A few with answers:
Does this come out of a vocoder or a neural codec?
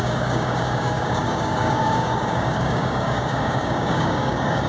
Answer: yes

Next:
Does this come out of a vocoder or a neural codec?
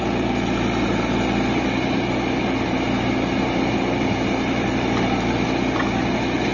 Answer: no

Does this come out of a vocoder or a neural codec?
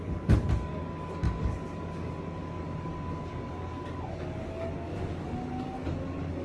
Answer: yes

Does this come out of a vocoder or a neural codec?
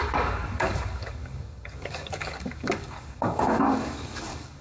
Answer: yes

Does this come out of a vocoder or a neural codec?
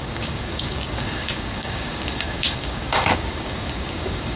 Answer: yes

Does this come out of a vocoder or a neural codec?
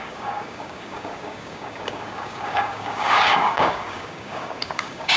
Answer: yes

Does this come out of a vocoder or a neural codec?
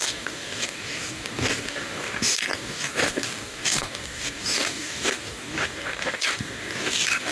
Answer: yes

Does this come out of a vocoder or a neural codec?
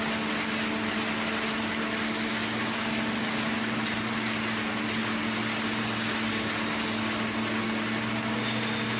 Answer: no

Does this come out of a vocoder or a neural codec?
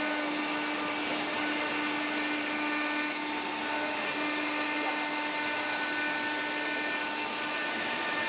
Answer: no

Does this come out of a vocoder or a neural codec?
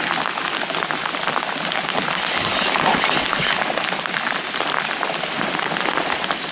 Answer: no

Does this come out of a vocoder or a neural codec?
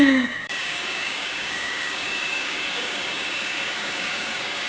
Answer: yes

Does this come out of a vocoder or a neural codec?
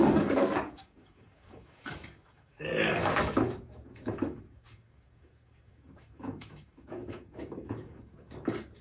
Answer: yes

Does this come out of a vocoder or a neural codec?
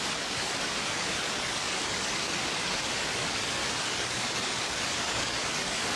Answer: yes